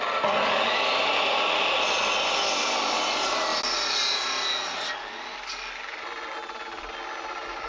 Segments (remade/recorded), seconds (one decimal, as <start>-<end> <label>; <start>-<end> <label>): 0.0-7.7 recorded